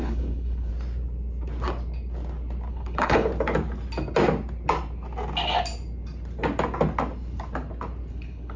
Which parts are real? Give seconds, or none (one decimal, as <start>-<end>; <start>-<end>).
0.7-2.7; 3.3-8.1